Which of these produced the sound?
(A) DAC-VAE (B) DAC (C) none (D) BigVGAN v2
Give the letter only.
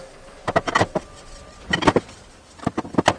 C